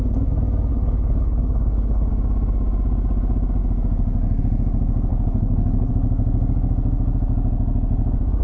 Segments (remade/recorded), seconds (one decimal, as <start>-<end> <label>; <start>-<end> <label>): 0.0-0.7 recorded; 0.7-2.1 remade; 2.1-5.1 recorded; 5.1-5.9 remade; 5.9-8.4 recorded